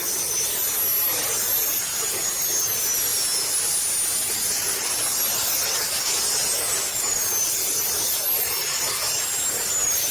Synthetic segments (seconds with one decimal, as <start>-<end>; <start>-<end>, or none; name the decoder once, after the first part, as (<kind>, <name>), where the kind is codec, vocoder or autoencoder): none